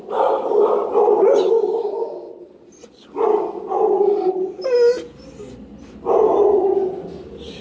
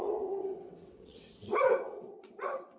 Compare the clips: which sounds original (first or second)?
first